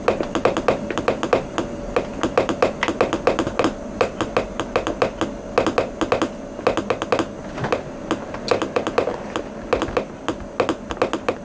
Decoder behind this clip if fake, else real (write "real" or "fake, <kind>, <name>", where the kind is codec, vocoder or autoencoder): real